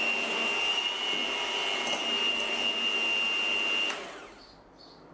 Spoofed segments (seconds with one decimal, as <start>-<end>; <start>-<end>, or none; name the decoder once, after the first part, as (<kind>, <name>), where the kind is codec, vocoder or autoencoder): none